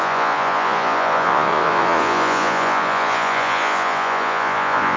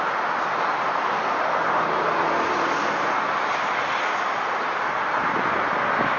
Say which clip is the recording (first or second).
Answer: second